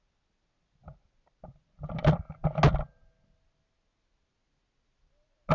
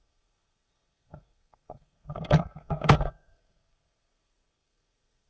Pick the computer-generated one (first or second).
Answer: second